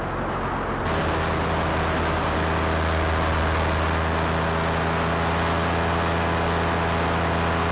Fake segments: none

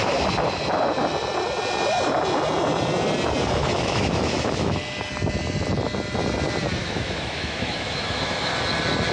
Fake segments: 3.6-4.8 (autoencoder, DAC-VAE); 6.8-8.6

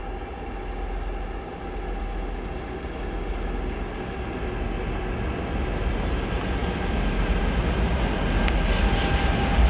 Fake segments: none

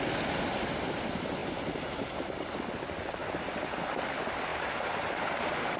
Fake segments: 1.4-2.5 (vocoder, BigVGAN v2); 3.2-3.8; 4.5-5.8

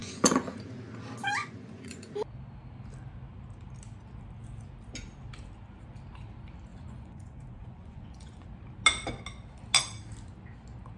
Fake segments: 0.0-0.8 (vocoder, Vocos); 1.4-2.1; 6.7-8.5

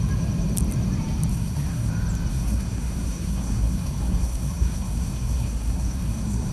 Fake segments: 1.3-1.9 (codec, SNAC); 2.3-6.5